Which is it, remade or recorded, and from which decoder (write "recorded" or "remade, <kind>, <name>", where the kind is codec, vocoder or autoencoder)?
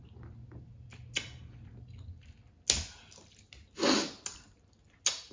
recorded